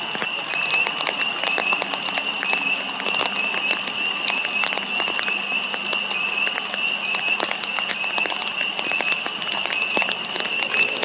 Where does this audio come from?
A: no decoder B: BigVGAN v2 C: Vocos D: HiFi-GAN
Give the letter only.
A